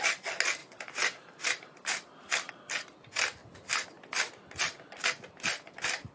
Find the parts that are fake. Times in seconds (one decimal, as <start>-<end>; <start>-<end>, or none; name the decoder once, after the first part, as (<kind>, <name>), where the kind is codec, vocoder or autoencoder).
0.6-2.5 (vocoder, BigVGAN v2)